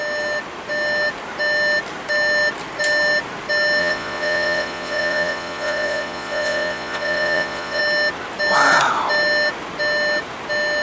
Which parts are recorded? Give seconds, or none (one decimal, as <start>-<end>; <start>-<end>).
0.0-3.8; 7.8-10.8